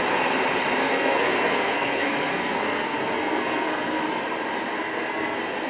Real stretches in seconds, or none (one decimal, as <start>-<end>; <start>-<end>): 0.0-0.8; 4.0-4.7